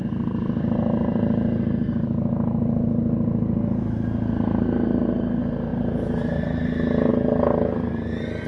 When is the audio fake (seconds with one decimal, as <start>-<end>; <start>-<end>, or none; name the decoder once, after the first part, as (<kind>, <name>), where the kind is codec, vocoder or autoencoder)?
none